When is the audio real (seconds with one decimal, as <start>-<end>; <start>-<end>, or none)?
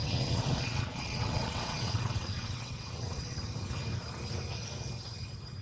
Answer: 3.4-5.6